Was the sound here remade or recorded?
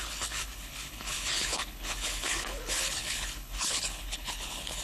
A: remade